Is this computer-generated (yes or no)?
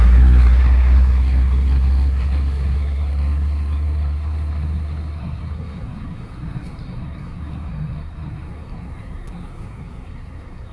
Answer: yes